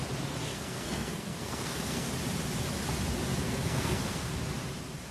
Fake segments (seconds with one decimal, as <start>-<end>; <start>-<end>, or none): 0.5-2.1; 3.3-4.4